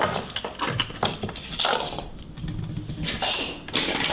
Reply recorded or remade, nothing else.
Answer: recorded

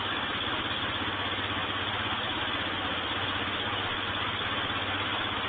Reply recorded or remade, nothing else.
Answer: recorded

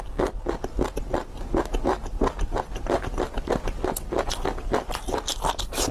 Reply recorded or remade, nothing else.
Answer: recorded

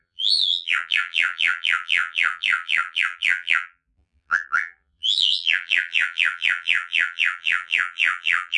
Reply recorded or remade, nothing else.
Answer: remade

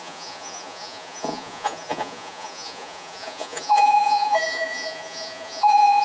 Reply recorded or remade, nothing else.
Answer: remade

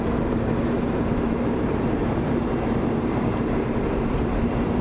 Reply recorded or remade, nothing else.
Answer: remade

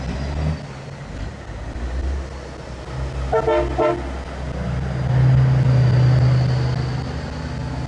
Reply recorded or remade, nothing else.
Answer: recorded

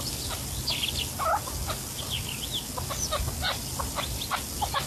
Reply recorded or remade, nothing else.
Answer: recorded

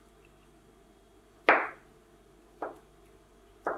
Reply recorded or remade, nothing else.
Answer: recorded